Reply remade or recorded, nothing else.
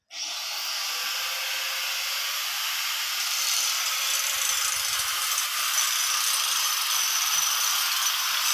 recorded